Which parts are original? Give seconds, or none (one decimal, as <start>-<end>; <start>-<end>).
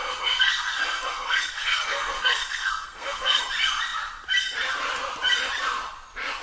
3.4-6.4